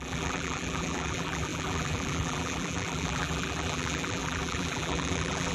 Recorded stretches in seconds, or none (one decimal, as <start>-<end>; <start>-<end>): none